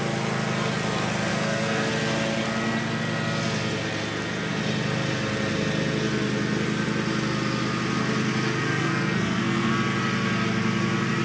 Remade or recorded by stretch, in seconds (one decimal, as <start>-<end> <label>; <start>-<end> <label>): 0.0-1.3 recorded; 1.3-1.9 remade; 1.9-8.7 recorded; 8.7-9.7 remade; 9.7-11.2 recorded